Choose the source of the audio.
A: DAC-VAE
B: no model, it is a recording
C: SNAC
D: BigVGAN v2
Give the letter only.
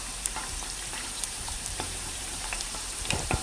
D